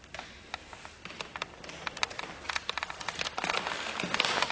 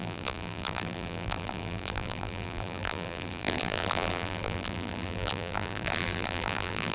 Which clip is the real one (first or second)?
first